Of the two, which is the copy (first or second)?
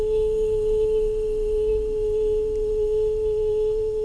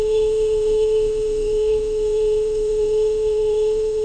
second